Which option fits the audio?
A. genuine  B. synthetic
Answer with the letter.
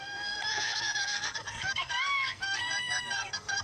B